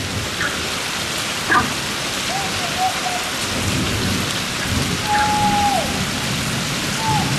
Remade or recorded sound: recorded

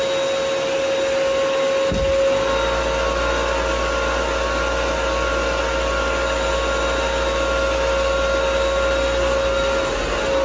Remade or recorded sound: recorded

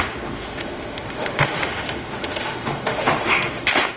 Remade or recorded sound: remade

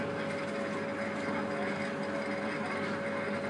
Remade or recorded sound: recorded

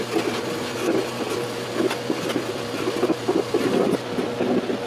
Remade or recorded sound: recorded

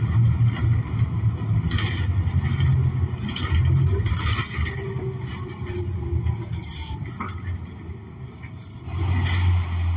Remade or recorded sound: recorded